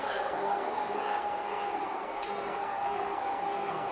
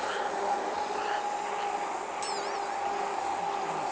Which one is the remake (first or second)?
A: first